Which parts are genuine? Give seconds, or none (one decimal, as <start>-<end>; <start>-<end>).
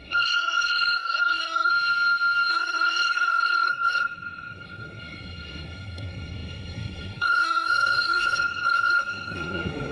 1.7-2.5